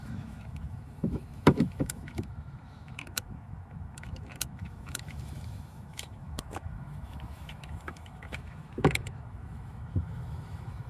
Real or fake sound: fake